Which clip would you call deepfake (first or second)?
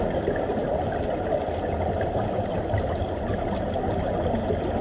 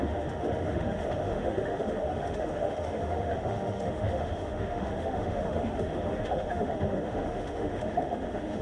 second